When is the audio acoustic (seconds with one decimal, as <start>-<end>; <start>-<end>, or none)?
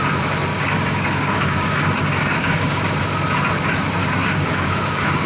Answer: 0.0-0.5; 3.0-4.0